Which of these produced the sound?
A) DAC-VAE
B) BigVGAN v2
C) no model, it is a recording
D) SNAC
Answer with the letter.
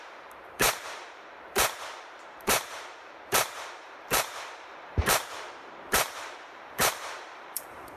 B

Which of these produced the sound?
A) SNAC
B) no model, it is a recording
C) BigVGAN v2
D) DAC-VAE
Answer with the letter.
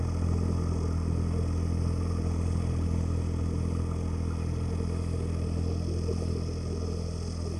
B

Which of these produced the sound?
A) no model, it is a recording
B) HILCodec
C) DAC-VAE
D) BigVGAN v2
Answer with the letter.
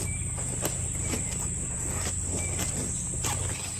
A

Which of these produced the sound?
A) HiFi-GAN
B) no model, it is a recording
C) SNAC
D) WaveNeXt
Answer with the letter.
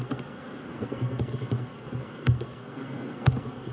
C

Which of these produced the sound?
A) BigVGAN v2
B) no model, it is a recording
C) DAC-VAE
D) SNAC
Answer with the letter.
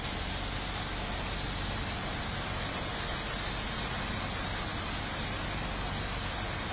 B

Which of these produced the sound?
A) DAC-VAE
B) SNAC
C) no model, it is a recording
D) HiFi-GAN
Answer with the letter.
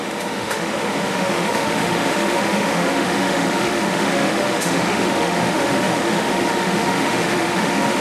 A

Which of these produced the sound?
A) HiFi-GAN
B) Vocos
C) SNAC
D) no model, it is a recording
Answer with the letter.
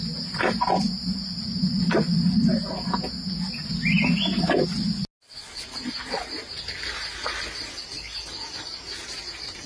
D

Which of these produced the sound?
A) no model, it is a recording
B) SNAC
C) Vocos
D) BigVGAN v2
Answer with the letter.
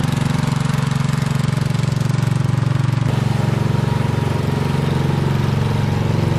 A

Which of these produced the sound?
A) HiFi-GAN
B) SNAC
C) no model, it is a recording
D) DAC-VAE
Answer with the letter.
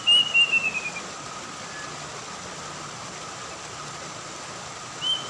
C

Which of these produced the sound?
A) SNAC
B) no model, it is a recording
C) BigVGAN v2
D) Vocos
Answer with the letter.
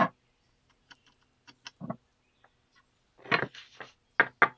B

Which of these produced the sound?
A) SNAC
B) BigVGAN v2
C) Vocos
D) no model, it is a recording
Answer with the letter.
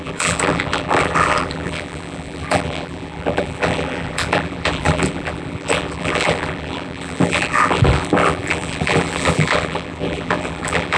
B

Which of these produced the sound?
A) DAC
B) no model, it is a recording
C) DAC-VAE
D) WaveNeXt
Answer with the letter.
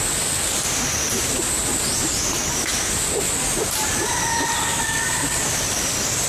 B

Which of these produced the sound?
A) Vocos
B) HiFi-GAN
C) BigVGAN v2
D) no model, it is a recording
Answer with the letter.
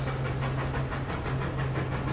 D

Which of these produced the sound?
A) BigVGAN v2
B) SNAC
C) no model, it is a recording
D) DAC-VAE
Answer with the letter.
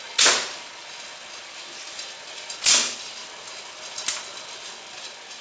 C